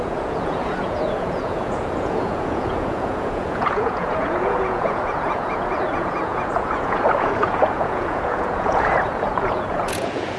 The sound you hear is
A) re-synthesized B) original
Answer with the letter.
A